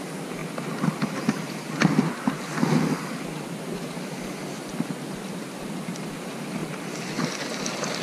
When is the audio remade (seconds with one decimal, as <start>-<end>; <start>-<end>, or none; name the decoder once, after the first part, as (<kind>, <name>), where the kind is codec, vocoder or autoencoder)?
none